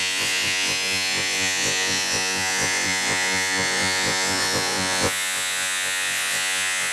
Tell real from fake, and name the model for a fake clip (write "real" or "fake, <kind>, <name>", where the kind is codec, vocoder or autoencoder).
fake, vocoder, Vocos